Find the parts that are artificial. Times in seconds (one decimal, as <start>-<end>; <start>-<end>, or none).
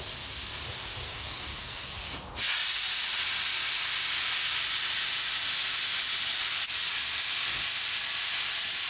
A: 1.0-2.1